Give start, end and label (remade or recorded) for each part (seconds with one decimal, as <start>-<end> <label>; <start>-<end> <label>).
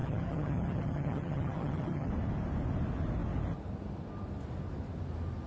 0.0-2.1 remade; 2.1-5.5 recorded